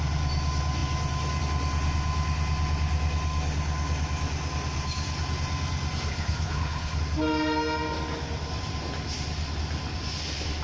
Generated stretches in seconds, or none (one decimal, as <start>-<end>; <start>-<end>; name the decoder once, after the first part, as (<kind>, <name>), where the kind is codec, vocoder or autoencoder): 6.1-7.0 (codec, HILCodec)

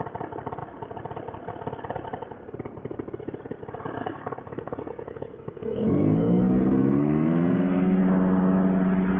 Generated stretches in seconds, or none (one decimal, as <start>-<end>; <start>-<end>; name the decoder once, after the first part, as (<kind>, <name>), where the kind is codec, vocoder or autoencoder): 4.0-8.0 (codec, SNAC)